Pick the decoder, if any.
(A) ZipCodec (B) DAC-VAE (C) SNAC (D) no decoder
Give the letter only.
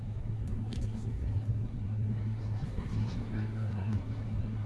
C